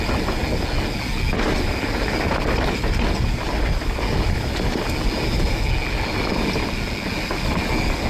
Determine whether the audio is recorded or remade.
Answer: recorded